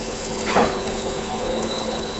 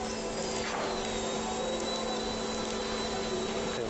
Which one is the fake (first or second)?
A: first